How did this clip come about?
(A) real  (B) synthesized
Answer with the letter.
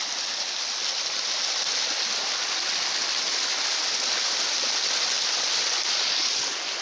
A